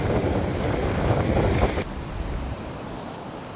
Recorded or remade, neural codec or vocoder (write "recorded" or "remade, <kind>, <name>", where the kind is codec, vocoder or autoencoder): recorded